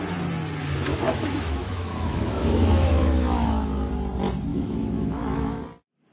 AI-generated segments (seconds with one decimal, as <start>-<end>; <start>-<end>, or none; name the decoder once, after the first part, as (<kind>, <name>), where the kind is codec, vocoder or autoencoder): 0.9-3.9 (autoencoder, DAC-VAE); 4.5-5.6